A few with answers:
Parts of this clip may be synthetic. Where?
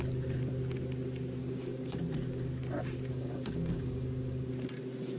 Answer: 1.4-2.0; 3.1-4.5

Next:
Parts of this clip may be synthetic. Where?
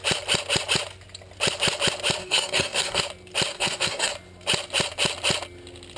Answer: 2.2-3.0; 3.5-4.1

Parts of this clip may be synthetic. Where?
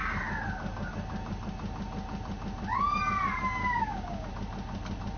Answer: 3.6-4.3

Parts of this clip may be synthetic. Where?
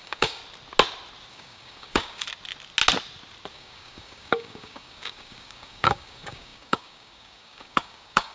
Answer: 0.0-0.4; 1.3-2.2; 3.5-8.3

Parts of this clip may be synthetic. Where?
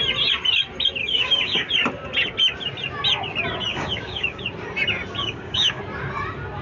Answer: 1.0-1.7; 3.7-4.4; 5.2-5.8